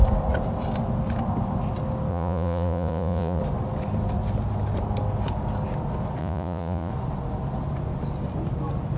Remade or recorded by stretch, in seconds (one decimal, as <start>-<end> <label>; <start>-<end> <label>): 0.0-2.1 recorded; 2.1-3.4 remade; 3.4-6.2 recorded; 6.2-6.9 remade; 6.9-9.0 recorded